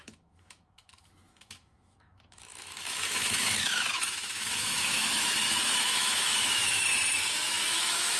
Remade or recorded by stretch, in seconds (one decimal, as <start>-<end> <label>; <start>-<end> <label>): 0.0-8.2 remade